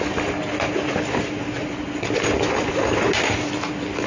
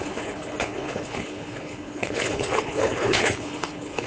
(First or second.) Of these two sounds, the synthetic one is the second